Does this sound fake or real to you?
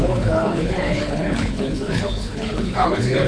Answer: fake